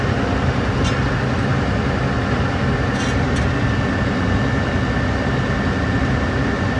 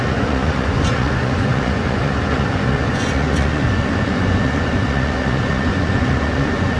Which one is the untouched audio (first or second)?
first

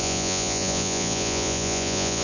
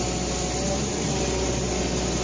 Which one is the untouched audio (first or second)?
second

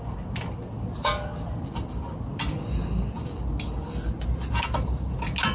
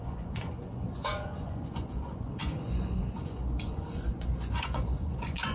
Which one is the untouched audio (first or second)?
first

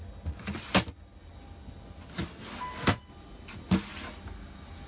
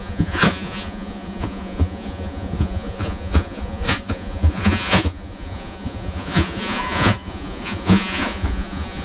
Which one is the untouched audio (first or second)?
first